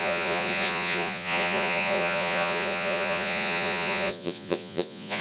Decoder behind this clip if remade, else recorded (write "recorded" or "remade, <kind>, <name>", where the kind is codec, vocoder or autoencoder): remade, vocoder, Vocos